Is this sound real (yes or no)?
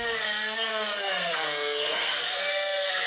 no